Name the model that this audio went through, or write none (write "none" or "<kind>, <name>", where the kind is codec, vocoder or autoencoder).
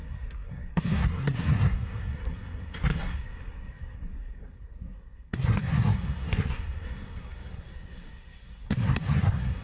codec, SNAC